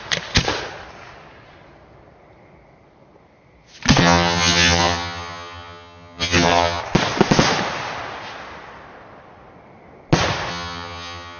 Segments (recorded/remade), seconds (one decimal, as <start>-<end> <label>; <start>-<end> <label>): 0.0-4.0 recorded; 4.0-6.8 remade; 6.8-10.5 recorded; 10.5-11.4 remade